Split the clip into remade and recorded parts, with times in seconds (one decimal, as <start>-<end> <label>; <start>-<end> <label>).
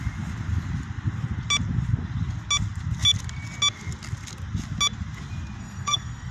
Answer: 0.0-5.6 recorded; 5.6-6.3 remade